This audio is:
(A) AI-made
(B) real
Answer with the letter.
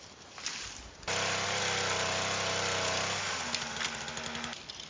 B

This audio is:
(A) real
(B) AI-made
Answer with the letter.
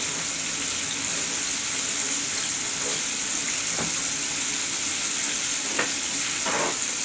A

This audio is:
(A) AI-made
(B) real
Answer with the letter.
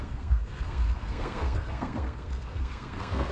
A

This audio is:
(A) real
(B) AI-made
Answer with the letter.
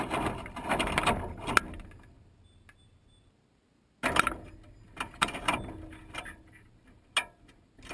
A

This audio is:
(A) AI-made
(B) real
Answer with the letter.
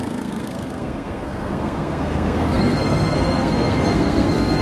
A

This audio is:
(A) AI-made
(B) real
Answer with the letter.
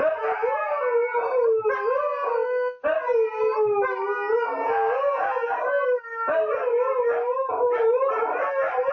B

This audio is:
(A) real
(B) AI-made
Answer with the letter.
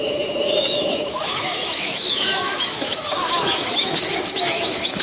B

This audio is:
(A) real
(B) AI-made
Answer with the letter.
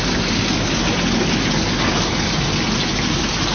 A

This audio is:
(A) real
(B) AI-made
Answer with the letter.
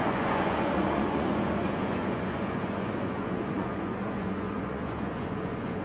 B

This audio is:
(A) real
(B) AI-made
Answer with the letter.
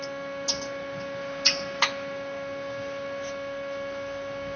A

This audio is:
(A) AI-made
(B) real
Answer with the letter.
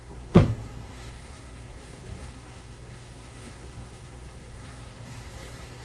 A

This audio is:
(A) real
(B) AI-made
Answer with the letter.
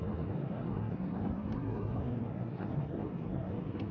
B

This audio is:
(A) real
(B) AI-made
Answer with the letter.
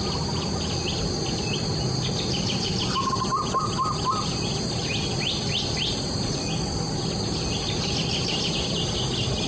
A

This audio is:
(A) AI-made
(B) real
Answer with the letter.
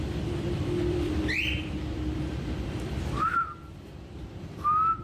A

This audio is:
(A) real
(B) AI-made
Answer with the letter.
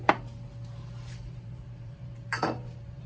B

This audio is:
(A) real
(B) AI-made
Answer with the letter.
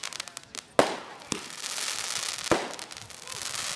A